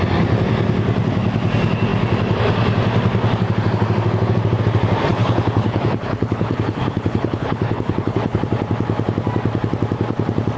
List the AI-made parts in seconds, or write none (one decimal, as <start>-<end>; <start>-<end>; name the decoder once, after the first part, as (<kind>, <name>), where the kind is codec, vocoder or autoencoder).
5.1-8.4 (codec, HILCodec)